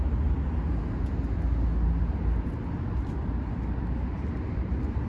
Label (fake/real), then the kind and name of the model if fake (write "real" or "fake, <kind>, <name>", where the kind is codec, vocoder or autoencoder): real